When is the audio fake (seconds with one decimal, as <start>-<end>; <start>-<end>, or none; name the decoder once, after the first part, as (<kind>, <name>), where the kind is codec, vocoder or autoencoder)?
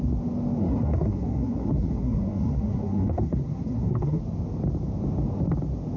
0.6-4.2 (codec, SNAC)